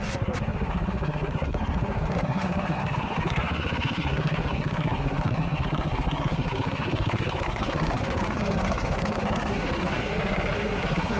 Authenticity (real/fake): fake